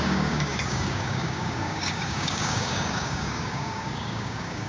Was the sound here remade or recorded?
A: remade